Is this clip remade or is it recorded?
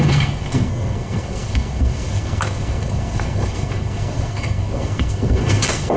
remade